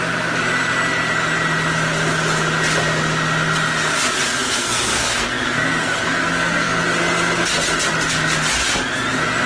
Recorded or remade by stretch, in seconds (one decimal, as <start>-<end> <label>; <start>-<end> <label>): 0.0-4.3 recorded; 4.3-6.8 remade; 6.8-9.5 recorded